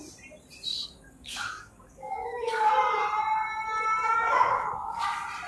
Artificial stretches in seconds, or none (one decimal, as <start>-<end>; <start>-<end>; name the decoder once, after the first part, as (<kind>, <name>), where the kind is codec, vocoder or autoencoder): 0.7-2.7 (codec, DAC); 4.1-5.0